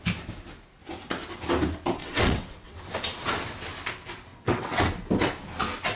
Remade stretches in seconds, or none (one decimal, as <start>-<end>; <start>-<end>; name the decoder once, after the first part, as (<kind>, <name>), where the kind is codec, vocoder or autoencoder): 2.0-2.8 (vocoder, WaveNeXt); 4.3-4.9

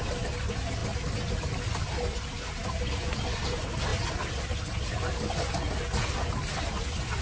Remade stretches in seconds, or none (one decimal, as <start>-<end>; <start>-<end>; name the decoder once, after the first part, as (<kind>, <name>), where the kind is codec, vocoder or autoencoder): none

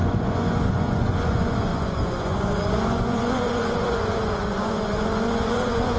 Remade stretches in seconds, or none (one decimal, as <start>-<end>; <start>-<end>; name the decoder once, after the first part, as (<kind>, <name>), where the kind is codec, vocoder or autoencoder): 0.0-6.0 (vocoder, Vocos)